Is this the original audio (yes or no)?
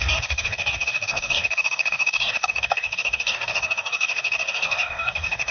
no